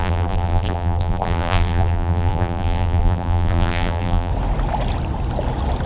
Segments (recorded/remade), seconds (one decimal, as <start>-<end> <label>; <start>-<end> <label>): 0.0-4.3 remade; 4.3-5.9 recorded